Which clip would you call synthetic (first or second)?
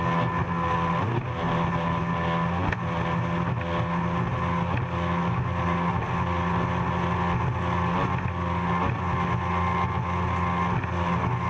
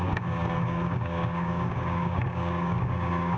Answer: second